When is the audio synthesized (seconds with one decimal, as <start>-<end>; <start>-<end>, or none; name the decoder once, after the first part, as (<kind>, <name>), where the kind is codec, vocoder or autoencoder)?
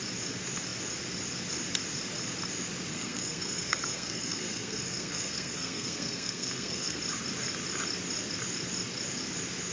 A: 2.9-7.0 (codec, SNAC)